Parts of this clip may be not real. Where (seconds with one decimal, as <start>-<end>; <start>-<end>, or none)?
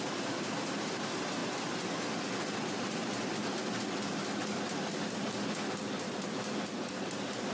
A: none